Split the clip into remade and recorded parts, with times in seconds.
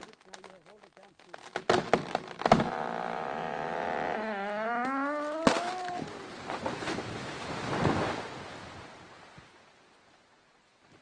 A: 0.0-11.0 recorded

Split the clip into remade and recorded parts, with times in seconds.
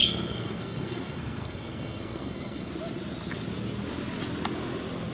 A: 0.0-2.7 remade; 2.7-5.1 recorded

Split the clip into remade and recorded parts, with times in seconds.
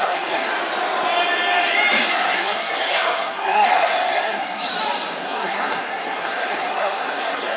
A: 0.0-0.5 remade; 0.5-2.1 recorded; 2.1-4.7 remade; 4.7-5.2 recorded; 5.2-7.6 remade